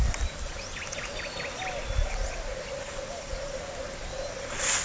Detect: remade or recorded recorded